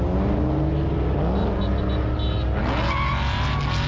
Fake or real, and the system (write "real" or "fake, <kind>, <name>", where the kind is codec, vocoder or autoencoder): real